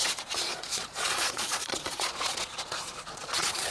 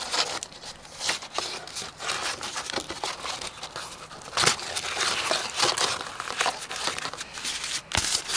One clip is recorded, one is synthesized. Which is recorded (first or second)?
second